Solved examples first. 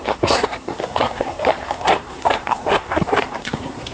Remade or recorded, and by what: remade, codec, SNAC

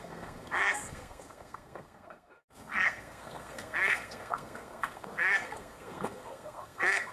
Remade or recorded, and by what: remade, codec, SNAC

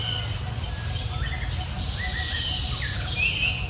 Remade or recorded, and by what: recorded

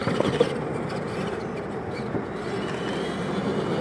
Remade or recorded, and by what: recorded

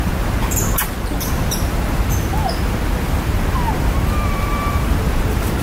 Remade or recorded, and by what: remade, vocoder, BigVGAN v2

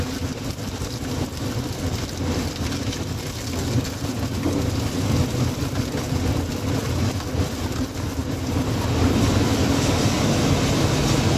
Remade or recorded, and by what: recorded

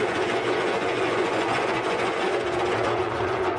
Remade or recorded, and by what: remade, vocoder, Vocos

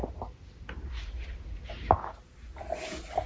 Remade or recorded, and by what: recorded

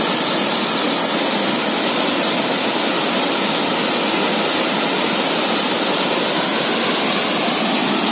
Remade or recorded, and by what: recorded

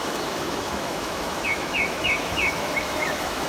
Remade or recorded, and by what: remade, autoencoder, DAC-VAE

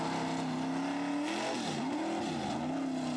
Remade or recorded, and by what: recorded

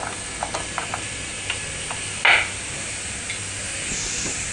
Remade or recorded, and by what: recorded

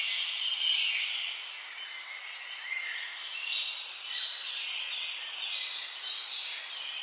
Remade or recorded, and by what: recorded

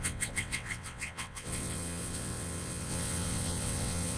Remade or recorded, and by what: remade, vocoder, WaveNeXt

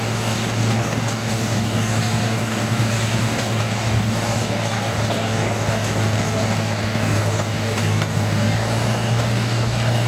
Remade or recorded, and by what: remade, codec, DAC